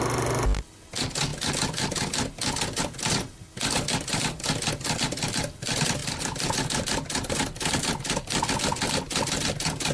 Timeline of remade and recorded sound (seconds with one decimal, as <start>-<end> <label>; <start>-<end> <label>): 0.0-9.9 recorded